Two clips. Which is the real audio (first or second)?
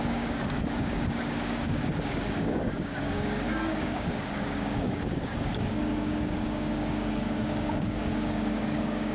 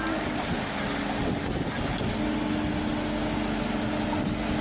second